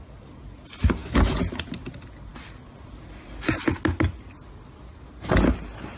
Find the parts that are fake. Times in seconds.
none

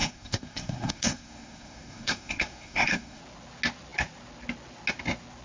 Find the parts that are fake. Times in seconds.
0.0-3.2 (codec, SNAC)

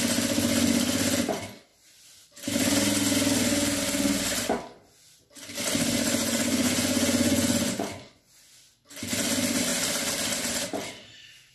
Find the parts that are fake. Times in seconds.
6.2-8.5 (vocoder, Vocos)

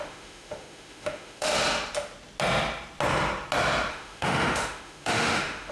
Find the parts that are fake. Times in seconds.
0.0-1.5 (autoencoder, DAC-VAE); 3.9-5.7

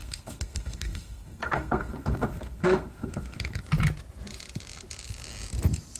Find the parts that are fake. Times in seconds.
0.0-3.6 (codec, SNAC)